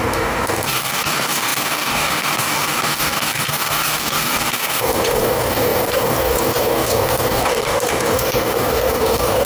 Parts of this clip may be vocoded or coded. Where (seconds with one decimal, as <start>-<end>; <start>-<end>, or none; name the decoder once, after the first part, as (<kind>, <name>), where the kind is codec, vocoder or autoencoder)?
0.0-9.5 (codec, DAC)